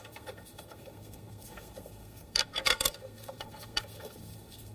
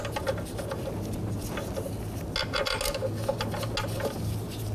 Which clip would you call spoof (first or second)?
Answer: first